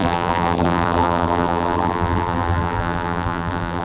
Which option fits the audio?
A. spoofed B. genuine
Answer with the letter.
A